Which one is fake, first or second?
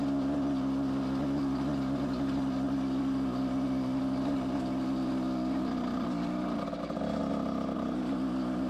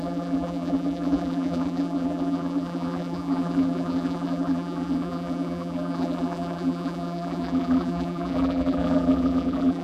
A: second